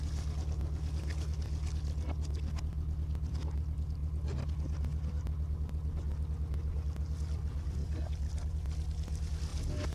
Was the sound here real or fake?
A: real